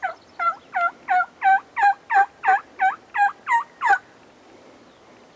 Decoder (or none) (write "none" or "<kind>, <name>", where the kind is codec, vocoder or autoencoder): none